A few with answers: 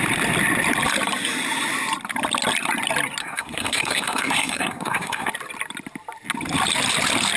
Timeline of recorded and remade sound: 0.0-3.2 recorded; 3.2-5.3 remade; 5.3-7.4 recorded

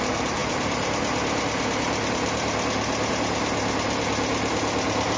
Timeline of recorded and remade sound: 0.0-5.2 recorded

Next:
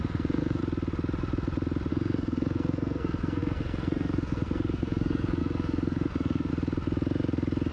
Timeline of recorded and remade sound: 0.0-0.6 remade; 0.6-1.9 recorded; 1.9-6.5 remade; 6.5-7.7 recorded